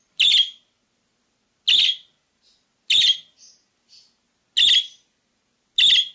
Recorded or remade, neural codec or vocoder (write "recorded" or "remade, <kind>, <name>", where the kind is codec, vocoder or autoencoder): recorded